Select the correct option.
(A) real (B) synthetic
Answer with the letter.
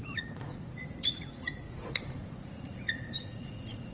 B